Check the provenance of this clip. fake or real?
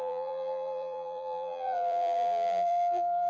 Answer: fake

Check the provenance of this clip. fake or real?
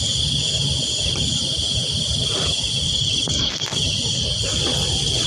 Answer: real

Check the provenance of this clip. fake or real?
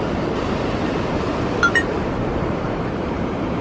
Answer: fake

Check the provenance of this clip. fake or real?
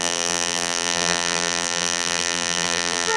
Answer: fake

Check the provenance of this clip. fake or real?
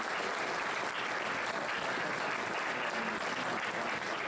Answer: real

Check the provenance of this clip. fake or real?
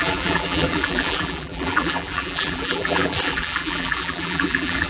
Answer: fake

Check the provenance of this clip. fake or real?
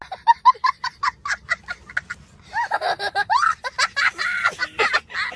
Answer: real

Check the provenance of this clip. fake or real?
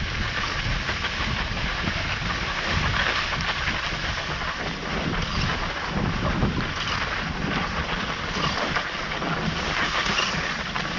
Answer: real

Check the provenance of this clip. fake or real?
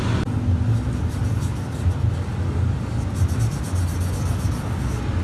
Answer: real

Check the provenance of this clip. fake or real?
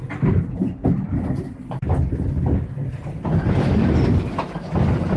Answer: real